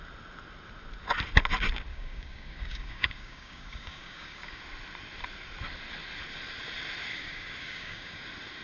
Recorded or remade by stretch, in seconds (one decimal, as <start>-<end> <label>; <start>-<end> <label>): 0.0-1.9 recorded; 1.9-4.6 remade; 4.6-7.1 recorded; 7.1-8.2 remade; 8.2-8.6 recorded